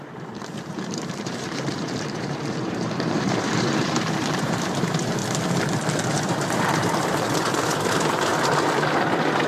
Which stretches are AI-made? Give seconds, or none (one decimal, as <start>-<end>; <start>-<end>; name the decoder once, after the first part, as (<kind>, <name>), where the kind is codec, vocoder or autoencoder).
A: 0.0-5.2 (vocoder, BigVGAN v2); 6.1-8.3